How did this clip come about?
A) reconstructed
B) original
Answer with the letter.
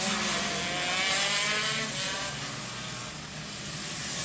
B